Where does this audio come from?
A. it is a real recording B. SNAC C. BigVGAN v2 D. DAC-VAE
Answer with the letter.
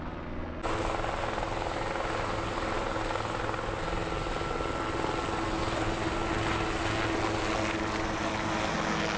A